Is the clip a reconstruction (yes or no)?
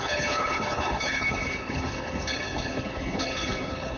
yes